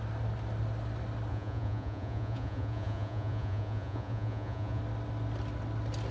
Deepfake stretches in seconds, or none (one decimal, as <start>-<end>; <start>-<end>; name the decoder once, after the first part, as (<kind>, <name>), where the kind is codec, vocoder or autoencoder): 1.3-4.8 (vocoder, Vocos)